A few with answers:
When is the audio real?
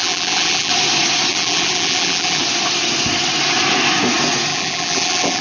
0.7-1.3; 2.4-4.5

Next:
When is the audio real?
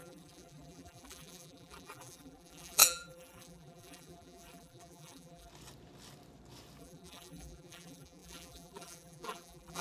5.5-6.8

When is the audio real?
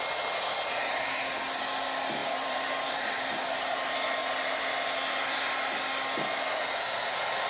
0.0-2.2; 3.8-7.5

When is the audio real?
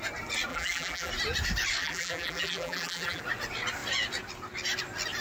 0.0-0.5; 1.1-1.8; 3.2-5.2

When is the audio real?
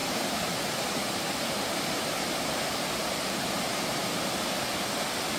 3.2-4.0; 4.7-5.4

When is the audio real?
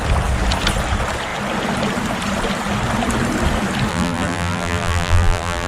0.0-3.9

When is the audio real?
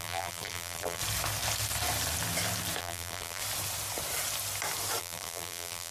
1.0-2.8; 3.4-5.0